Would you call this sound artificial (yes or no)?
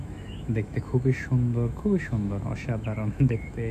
yes